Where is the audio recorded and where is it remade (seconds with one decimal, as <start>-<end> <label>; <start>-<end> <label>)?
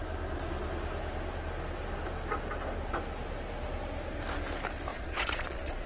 0.0-4.9 recorded; 4.9-5.9 remade